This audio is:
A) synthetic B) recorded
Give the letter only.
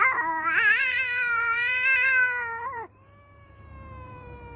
A